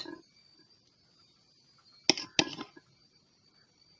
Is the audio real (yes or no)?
yes